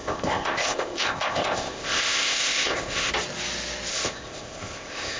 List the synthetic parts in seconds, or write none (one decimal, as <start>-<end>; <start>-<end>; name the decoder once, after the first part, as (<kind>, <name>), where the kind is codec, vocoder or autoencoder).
0.0-3.1 (codec, ZipCodec); 3.9-5.2